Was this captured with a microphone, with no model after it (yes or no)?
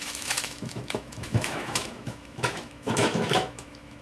no